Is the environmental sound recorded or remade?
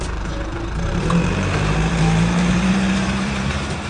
remade